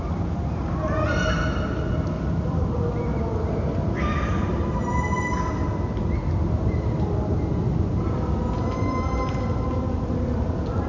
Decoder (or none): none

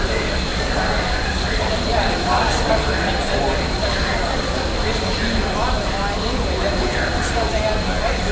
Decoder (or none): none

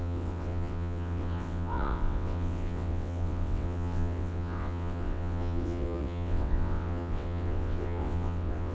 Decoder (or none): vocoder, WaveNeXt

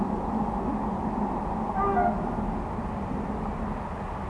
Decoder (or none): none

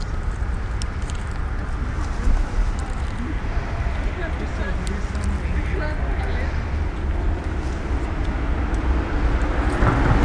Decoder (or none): none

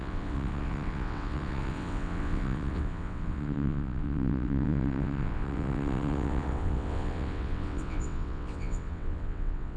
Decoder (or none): vocoder, WaveNeXt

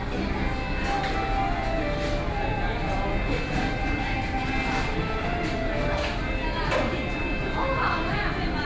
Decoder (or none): none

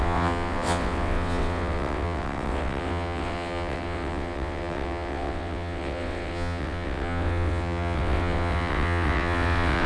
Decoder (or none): vocoder, WaveNeXt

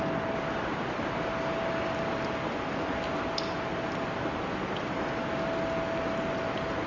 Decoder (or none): none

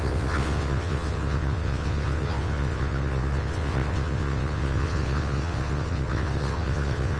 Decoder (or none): vocoder, WaveNeXt